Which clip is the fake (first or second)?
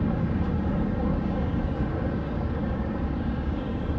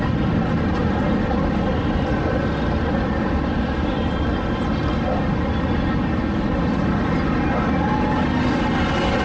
first